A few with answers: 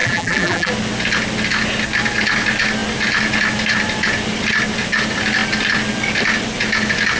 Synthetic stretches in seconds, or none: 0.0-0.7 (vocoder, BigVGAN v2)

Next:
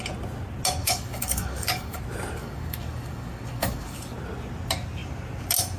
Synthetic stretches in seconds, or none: 0.8-2.0 (codec, DAC); 2.4-4.0

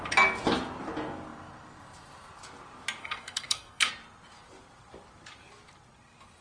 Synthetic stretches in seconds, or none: 3.0-3.9 (codec, SNAC)

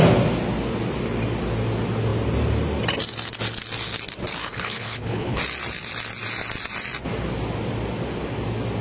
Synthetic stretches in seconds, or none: 4.4-5.4 (codec, HILCodec)

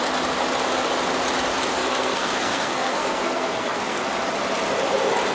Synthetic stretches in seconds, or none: 1.7-4.0 (codec, SNAC)

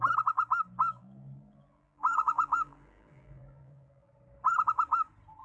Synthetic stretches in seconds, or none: 0.9-4.1 (vocoder, BigVGAN v2)